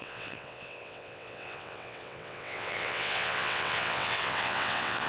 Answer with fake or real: fake